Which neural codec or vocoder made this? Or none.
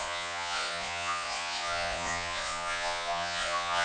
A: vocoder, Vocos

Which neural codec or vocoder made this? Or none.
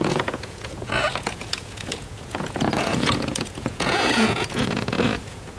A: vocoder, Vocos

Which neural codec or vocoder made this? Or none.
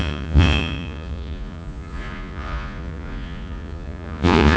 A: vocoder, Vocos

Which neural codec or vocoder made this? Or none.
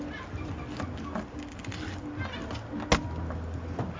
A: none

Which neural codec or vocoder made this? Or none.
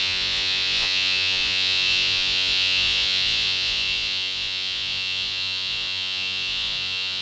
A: vocoder, Vocos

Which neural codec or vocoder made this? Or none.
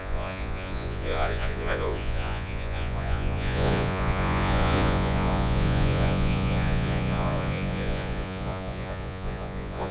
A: vocoder, Vocos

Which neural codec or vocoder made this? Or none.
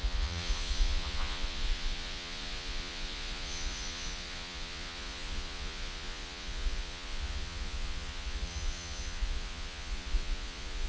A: vocoder, Vocos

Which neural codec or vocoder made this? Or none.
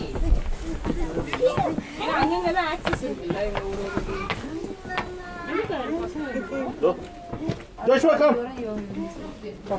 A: none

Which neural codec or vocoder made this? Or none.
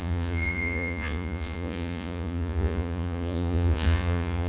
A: vocoder, Vocos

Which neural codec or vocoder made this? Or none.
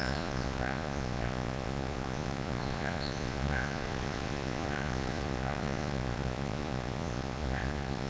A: vocoder, Vocos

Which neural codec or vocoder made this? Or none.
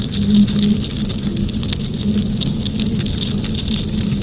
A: none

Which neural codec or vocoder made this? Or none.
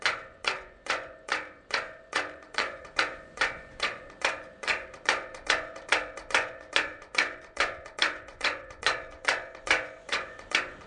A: vocoder, Vocos